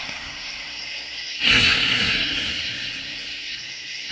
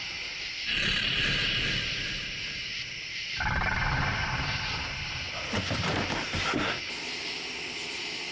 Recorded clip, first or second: second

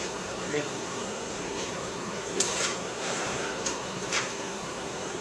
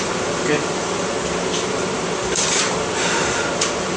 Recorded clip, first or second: second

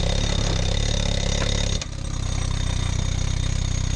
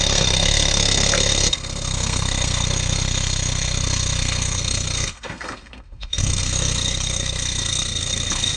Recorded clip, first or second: first